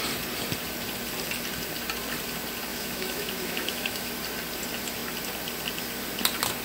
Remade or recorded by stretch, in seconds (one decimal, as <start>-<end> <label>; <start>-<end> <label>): 0.0-2.7 recorded; 2.7-4.1 remade; 4.1-6.6 recorded